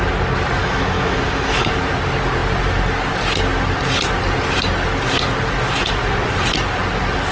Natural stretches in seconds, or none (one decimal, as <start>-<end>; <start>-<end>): 0.0-0.6; 1.7-7.3